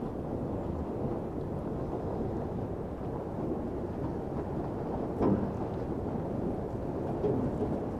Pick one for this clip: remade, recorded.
recorded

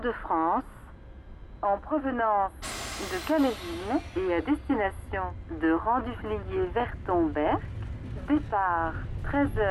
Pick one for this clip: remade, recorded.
recorded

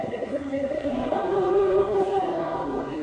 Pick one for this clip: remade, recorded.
remade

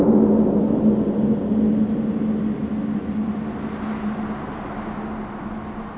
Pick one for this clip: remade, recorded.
recorded